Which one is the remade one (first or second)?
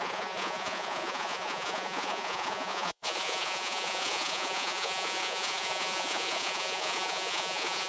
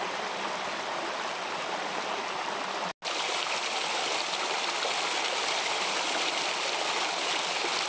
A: first